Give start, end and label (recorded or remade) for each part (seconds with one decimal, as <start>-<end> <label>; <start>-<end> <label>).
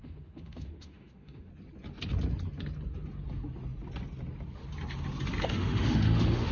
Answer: 0.0-1.5 remade; 1.5-5.4 recorded; 5.4-6.5 remade